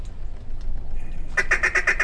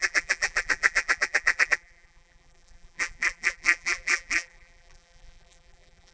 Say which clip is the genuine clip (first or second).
first